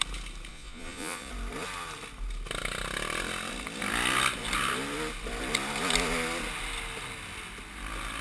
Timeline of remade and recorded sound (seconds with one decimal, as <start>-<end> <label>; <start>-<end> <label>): 0.0-0.5 recorded; 0.5-1.3 remade; 1.3-8.2 recorded